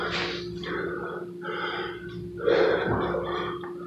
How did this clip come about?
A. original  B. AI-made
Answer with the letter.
A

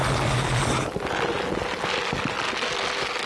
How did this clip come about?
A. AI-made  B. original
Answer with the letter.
B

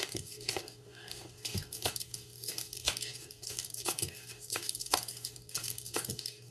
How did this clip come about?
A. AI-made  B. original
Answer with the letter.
A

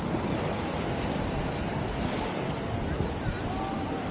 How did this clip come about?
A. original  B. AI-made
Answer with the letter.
A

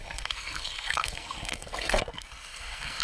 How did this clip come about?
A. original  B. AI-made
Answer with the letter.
B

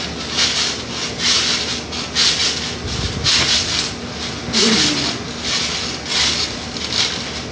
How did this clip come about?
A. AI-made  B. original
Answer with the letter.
B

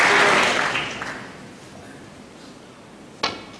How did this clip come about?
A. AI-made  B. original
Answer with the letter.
B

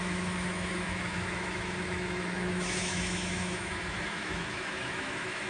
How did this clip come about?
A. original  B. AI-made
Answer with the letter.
B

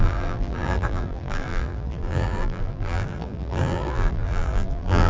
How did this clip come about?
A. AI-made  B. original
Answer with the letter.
A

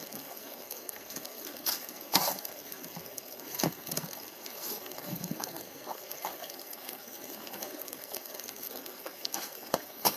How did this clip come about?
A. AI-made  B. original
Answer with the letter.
A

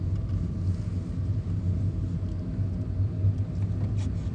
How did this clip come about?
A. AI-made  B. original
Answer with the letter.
B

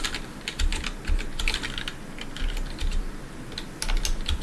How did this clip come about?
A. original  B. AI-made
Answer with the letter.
A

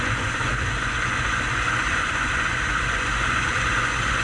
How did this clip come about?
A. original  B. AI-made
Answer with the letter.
B